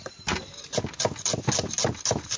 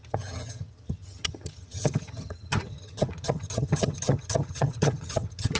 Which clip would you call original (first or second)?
first